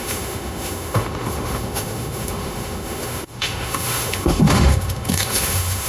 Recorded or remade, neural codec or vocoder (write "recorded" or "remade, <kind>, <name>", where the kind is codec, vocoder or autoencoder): remade, autoencoder, DAC-VAE